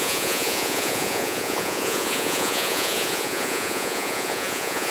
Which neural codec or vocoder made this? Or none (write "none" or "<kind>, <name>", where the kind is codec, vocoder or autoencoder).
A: vocoder, Vocos